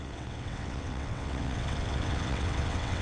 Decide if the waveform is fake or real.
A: fake